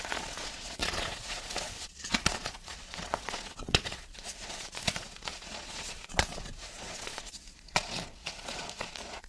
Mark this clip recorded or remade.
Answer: remade